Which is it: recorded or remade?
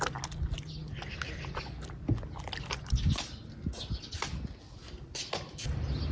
recorded